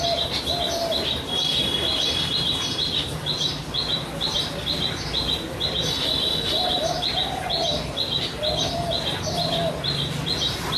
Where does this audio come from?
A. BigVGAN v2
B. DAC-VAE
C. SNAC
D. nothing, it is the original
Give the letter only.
D